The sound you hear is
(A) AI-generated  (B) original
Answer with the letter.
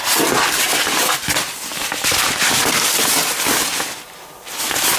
B